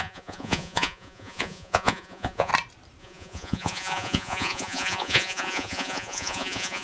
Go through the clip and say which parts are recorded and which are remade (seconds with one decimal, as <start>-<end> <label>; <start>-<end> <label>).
0.0-2.5 remade; 2.5-3.0 recorded; 3.0-6.8 remade